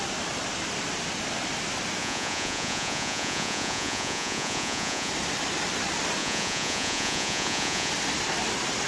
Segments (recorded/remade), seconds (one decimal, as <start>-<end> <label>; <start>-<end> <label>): 0.0-2.0 recorded; 2.0-5.1 remade; 5.1-6.2 recorded; 6.2-7.9 remade; 7.9-8.9 recorded